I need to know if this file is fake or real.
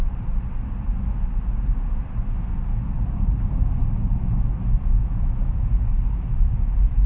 real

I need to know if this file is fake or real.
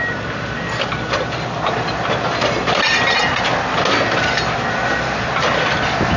real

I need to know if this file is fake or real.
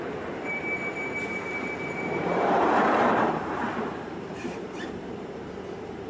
fake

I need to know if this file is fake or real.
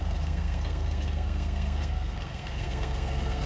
fake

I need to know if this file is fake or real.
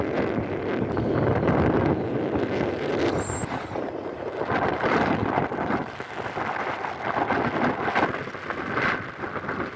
real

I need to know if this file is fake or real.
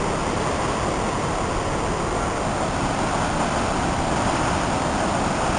real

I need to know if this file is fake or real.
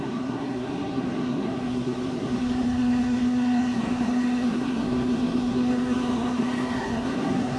fake